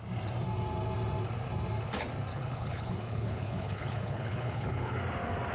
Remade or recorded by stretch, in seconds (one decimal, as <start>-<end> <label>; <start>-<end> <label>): 0.0-2.3 recorded; 2.3-5.0 remade; 5.0-5.5 recorded